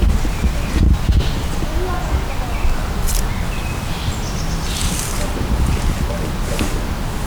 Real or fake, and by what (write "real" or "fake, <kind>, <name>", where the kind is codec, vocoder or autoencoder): real